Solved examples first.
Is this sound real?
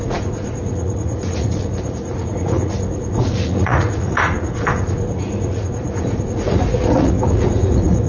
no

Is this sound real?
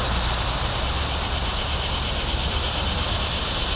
yes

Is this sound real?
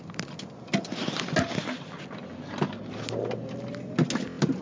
yes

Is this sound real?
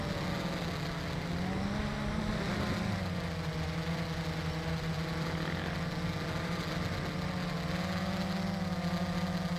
yes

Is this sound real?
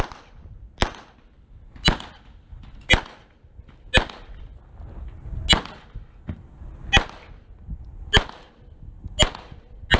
yes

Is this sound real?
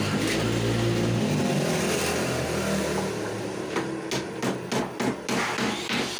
yes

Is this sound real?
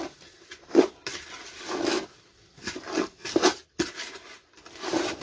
yes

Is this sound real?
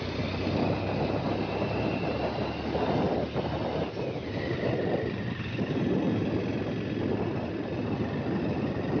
yes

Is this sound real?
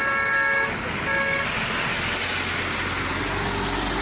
yes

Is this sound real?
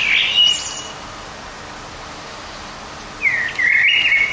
yes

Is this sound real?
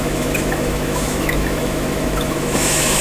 no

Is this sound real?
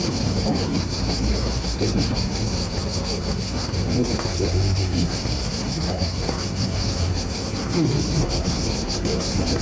no